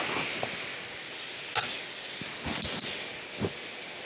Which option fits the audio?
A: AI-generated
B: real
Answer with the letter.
B